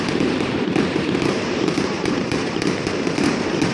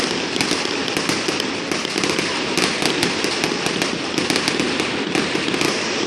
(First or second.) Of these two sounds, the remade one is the first